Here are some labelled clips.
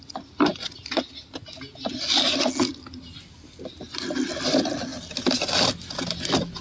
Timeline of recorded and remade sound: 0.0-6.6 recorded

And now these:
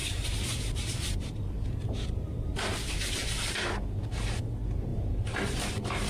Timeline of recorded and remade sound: 0.0-3.7 remade; 3.7-4.9 recorded; 4.9-6.1 remade

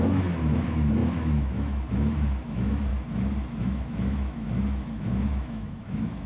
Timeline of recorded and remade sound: 0.0-2.9 remade; 2.9-3.6 recorded; 3.6-6.3 remade

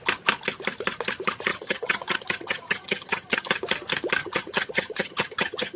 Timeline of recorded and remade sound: 0.0-1.5 recorded; 1.5-3.5 remade; 3.5-4.2 recorded; 4.2-5.8 remade

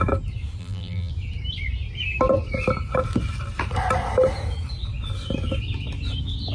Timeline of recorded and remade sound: 0.0-0.6 recorded; 0.6-1.1 remade; 1.1-6.5 recorded